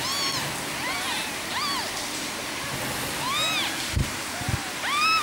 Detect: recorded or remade recorded